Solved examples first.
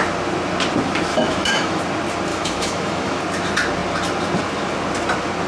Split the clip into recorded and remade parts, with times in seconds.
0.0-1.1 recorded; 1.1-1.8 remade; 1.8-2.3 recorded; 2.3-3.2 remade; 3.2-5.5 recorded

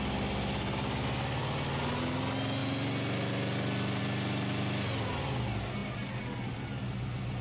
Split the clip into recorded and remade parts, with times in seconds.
0.0-7.4 recorded

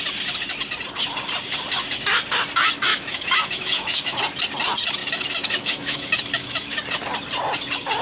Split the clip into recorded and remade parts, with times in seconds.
0.0-2.9 recorded; 2.9-4.2 remade; 4.2-5.0 recorded; 5.0-6.8 remade; 6.8-8.0 recorded

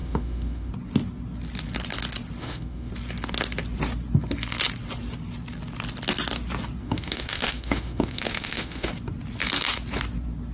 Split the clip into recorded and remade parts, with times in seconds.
0.0-0.7 remade; 0.7-2.4 recorded; 2.4-2.9 remade; 2.9-6.8 recorded; 6.8-8.9 remade; 8.9-10.5 recorded

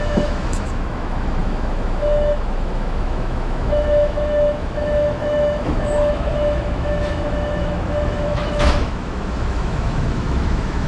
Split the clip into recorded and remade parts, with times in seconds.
0.0-10.9 remade